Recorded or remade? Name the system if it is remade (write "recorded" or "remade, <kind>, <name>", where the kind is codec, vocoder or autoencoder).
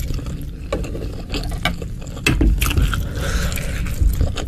recorded